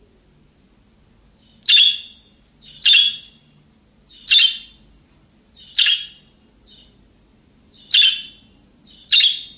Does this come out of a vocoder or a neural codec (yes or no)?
no